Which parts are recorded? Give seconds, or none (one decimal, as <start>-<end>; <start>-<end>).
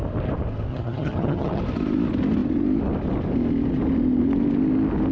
0.0-0.7; 1.6-5.1